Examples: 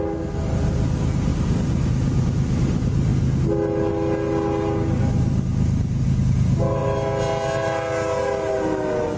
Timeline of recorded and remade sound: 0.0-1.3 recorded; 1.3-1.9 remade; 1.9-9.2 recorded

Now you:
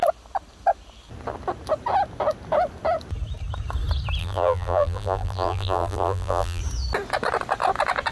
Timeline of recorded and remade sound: 0.0-4.2 recorded; 4.2-6.6 remade; 6.6-8.1 recorded